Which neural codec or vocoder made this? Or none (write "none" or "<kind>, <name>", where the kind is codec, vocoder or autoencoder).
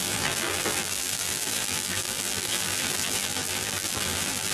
vocoder, BigVGAN v2